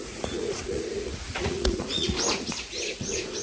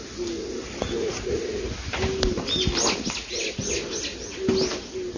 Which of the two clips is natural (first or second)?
second